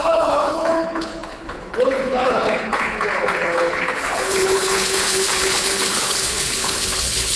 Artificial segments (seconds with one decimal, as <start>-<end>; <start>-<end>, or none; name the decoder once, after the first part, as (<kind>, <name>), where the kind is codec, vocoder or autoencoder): 0.0-7.4 (codec, HILCodec)